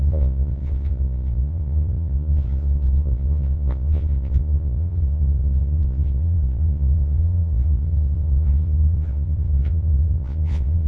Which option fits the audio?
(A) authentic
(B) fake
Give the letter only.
B